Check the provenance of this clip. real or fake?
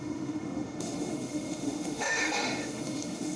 fake